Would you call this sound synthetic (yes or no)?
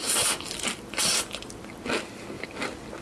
yes